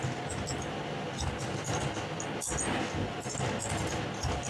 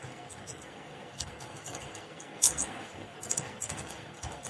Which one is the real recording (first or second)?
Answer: first